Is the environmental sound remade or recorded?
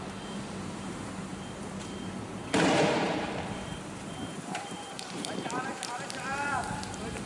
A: remade